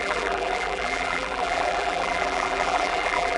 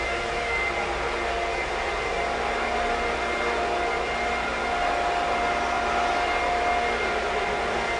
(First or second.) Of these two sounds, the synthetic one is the first